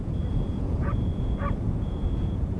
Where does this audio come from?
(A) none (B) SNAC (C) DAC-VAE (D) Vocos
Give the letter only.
D